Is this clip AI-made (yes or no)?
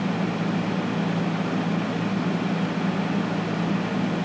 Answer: no